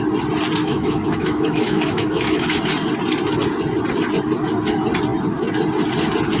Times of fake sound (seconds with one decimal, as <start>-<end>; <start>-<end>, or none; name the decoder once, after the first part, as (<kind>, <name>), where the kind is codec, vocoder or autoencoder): 0.6-2.6 (autoencoder, DAC-VAE)